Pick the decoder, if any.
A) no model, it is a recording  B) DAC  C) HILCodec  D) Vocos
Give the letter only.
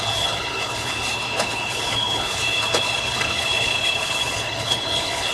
C